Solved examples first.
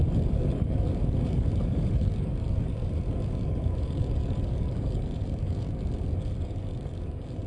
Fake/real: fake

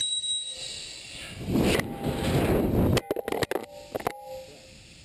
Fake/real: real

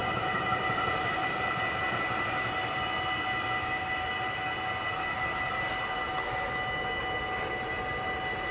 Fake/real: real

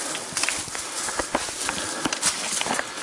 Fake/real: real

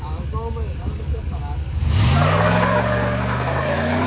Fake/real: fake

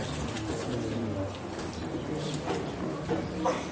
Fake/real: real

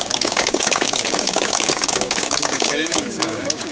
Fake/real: fake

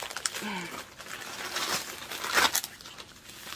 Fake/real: real